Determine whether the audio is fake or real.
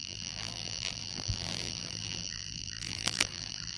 fake